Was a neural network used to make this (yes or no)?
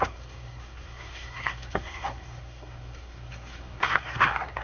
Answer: yes